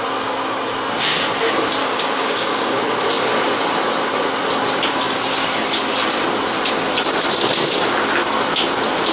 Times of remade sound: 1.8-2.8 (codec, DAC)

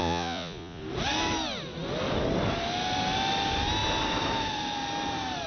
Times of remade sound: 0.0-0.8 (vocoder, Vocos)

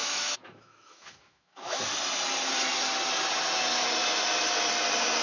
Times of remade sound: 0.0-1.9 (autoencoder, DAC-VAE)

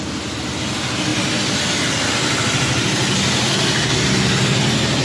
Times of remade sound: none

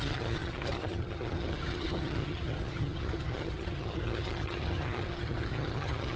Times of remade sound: 0.0-6.2 (vocoder, HiFi-GAN)

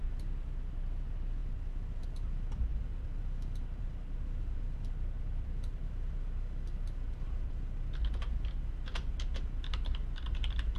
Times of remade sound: none

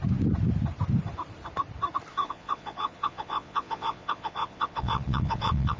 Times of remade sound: 2.1-5.8 (vocoder, Vocos)

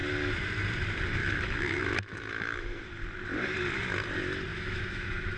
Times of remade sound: 1.2-2.8 (autoencoder, DAC-VAE); 4.5-5.4